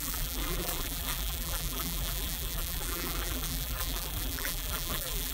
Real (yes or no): no